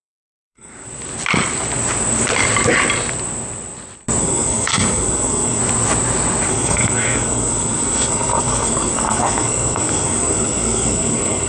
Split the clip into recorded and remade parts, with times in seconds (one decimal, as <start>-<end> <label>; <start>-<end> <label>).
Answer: 0.0-0.7 remade; 0.7-4.2 recorded; 4.2-5.6 remade; 5.6-6.5 recorded; 6.5-11.5 remade